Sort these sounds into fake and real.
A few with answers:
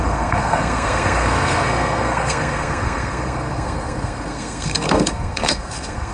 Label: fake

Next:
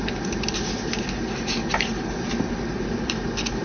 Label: fake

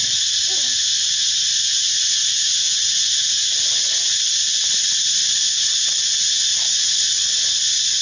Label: real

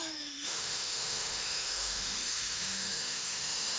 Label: fake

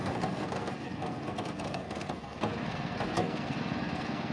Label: fake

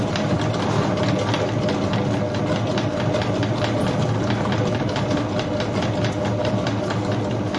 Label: real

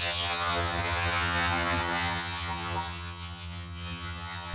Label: fake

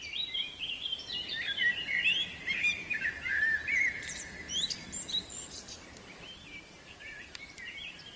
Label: fake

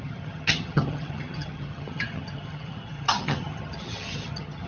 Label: fake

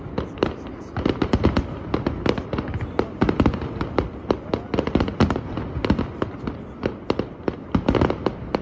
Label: real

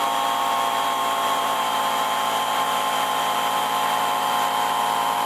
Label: fake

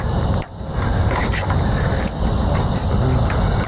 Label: real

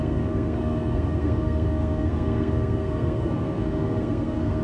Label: fake